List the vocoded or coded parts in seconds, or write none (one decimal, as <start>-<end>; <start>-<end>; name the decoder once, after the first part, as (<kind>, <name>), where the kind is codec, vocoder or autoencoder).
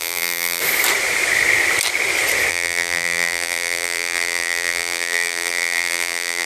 0.0-0.6 (vocoder, BigVGAN v2); 2.5-6.5